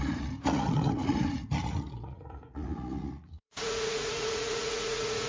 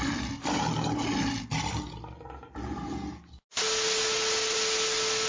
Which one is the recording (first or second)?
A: second